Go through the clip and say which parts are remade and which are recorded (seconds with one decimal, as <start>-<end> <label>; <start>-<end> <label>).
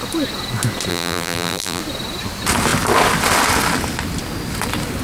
0.0-0.9 recorded; 0.9-1.8 remade; 1.8-5.0 recorded